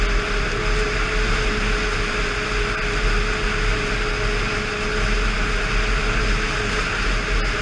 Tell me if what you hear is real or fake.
real